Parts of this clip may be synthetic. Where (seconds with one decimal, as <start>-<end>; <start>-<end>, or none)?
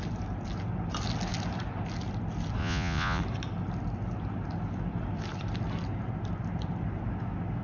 2.6-3.2